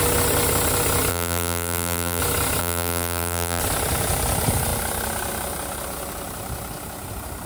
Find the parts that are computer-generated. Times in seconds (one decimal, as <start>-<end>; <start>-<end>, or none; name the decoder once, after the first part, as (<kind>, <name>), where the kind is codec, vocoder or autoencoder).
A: 1.1-2.2 (vocoder, BigVGAN v2); 2.6-3.6